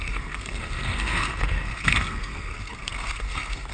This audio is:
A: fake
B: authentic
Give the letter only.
A